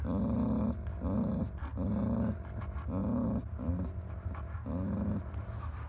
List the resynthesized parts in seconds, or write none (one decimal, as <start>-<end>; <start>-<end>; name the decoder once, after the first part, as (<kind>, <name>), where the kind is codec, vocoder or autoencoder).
none

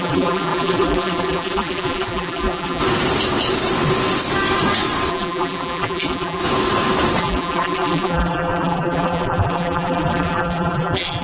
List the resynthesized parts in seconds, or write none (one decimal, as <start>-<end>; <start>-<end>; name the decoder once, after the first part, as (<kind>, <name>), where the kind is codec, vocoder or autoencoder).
0.0-2.8 (vocoder, BigVGAN v2); 5.1-6.4; 7.2-11.2

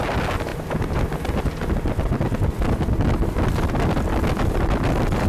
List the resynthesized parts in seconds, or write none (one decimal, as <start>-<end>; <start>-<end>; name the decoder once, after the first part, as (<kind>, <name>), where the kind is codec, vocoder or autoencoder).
none

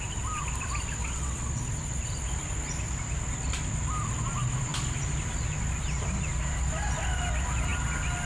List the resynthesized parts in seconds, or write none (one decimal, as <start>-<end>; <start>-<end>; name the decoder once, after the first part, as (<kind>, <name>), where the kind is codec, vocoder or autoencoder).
1.0-1.6 (vocoder, WaveNeXt)

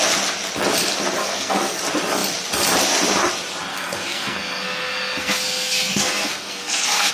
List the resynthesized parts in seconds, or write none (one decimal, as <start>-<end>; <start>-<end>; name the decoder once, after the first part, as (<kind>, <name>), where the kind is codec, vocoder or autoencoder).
1.2-1.8 (codec, SNAC); 3.7-7.1

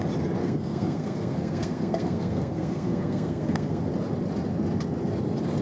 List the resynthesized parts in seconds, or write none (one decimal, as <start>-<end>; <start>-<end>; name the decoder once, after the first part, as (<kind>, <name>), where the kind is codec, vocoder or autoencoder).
0.4-3.8 (codec, SNAC)